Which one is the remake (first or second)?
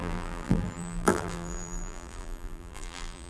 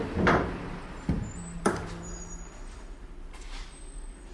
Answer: first